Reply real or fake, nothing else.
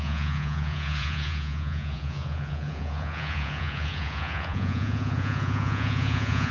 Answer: fake